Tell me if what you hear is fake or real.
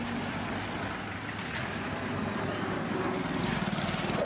real